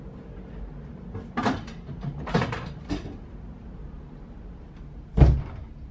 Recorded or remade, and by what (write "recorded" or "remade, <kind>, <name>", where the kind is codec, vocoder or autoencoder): recorded